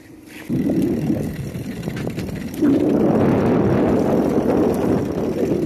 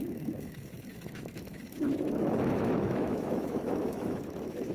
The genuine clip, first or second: first